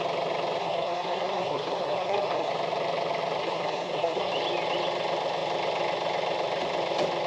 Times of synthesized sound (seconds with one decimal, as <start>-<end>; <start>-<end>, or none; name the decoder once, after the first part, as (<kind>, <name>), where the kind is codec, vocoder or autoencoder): 0.6-2.5 (codec, SNAC); 3.4-4.3